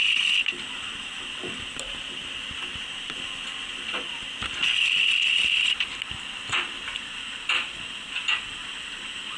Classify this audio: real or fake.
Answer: fake